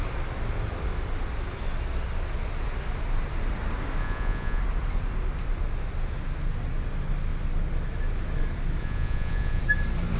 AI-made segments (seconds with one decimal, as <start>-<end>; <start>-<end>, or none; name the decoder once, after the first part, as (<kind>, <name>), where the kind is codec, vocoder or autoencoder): 4.0-4.6 (vocoder, Vocos); 8.8-9.6